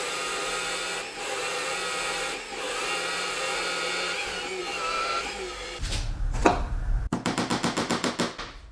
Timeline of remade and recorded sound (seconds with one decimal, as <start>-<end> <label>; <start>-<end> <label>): 0.0-4.6 recorded; 4.6-8.1 remade; 8.1-8.7 recorded